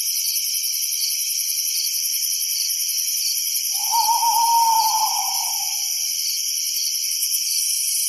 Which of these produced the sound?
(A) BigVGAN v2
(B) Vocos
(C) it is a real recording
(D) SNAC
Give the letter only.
C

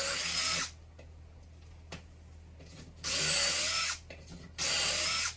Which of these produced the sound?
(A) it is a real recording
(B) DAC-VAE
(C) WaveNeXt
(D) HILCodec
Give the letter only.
A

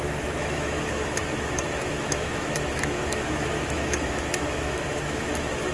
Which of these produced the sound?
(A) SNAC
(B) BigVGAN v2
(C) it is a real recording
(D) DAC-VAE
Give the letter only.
D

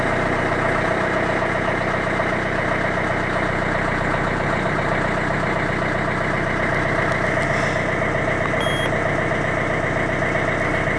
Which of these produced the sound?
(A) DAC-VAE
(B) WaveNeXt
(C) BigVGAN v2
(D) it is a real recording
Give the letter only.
D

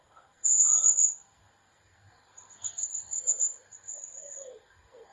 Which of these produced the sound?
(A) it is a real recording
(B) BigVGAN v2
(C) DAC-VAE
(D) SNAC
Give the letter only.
D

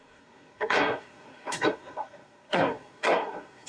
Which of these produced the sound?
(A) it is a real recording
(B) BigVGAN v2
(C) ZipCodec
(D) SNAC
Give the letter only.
D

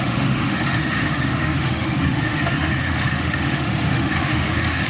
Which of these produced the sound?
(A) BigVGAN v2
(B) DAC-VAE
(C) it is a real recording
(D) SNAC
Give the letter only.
B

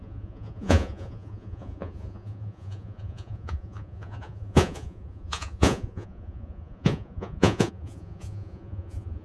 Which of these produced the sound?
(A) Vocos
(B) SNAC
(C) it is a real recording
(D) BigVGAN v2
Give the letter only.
A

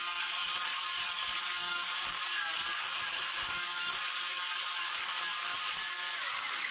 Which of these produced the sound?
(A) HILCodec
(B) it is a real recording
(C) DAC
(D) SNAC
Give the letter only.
C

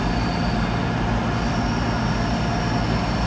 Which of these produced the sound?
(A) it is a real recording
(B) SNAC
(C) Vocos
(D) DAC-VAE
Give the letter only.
A